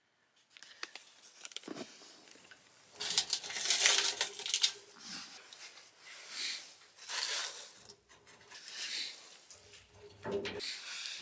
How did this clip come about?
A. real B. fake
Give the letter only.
A